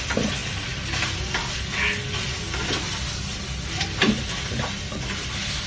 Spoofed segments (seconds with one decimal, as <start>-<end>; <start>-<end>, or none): none